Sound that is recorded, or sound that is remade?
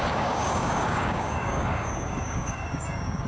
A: remade